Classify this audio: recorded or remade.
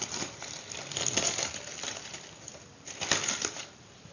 remade